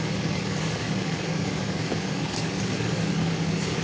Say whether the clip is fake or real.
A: fake